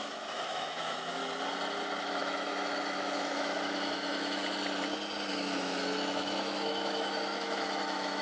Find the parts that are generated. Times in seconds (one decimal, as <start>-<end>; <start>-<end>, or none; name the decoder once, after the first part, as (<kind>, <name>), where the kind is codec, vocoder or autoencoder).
0.0-1.2 (autoencoder, DAC-VAE); 2.0-4.4; 5.3-8.2